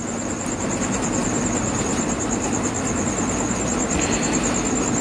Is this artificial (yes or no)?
no